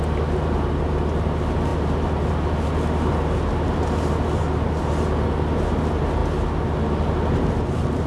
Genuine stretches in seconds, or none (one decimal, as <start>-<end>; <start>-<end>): 0.0-8.1